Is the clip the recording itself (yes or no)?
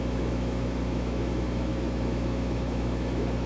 no